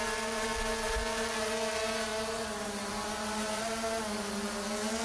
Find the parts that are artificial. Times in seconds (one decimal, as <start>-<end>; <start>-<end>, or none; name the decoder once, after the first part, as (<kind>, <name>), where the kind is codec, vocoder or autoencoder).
none

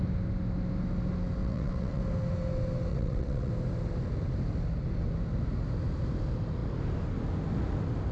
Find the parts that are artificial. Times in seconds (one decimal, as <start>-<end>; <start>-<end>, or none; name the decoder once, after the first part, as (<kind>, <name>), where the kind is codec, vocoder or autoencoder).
1.4-2.0 (vocoder, WaveNeXt); 2.9-3.5

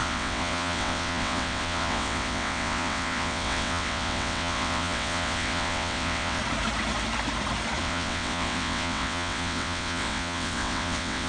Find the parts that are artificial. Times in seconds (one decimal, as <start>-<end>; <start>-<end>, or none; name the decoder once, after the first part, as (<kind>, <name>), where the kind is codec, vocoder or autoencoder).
0.0-6.4 (vocoder, WaveNeXt); 7.8-11.3

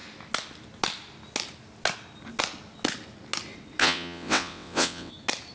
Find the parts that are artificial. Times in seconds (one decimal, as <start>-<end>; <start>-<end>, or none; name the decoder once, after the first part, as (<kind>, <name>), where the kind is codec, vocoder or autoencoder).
3.8-5.1 (vocoder, WaveNeXt)

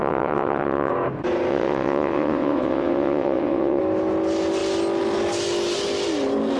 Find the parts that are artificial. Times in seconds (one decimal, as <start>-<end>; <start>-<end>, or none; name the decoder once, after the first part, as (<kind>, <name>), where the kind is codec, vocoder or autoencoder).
0.0-0.9 (vocoder, WaveNeXt); 1.5-3.8

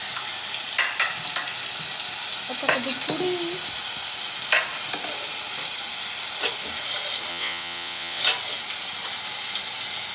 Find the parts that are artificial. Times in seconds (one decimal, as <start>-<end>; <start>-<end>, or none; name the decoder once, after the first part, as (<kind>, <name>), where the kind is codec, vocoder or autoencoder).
7.3-8.2 (vocoder, WaveNeXt)